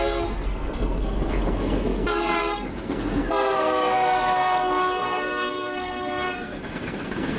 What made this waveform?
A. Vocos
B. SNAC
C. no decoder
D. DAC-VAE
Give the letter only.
B